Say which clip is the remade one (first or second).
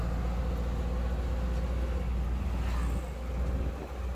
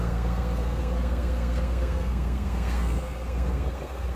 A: second